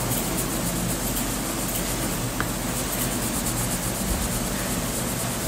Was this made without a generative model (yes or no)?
yes